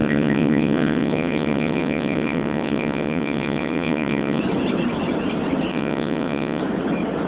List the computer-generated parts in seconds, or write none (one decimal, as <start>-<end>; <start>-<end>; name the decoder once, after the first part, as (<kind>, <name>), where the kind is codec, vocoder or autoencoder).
0.0-4.4 (vocoder, WaveNeXt); 5.7-6.6